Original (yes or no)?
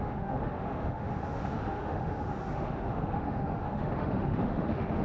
no